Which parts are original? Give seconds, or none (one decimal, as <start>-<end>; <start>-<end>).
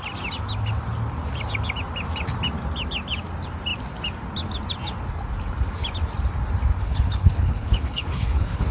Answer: 0.0-6.8